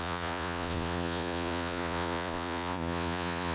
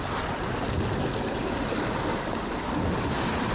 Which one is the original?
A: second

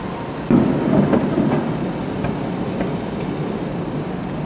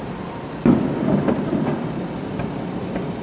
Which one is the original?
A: first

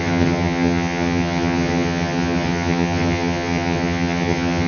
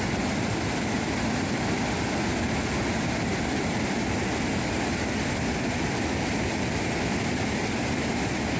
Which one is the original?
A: second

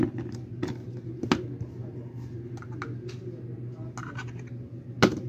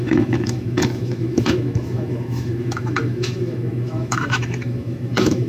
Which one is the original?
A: first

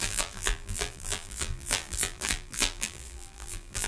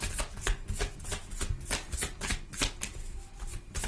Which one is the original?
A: second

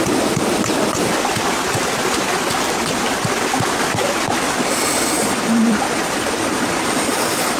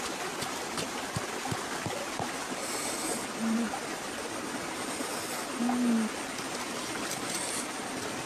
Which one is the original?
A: second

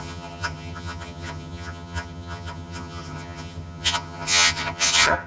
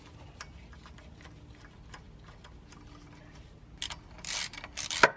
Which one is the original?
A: second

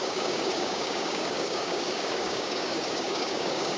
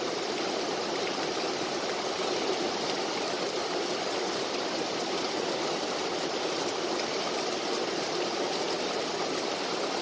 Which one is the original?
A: second